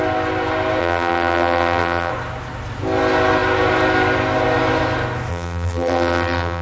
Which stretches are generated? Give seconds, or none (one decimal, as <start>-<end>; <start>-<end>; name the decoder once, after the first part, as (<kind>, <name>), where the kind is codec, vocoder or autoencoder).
0.8-2.1 (vocoder, BigVGAN v2); 5.3-6.6